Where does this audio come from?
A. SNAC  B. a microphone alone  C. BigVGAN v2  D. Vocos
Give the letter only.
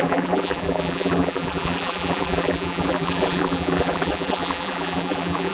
C